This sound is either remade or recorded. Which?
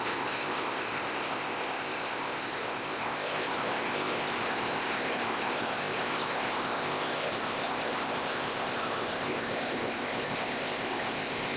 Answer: remade